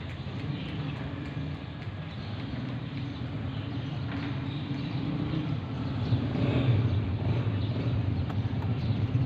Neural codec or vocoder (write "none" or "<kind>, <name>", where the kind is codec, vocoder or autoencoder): vocoder, BigVGAN v2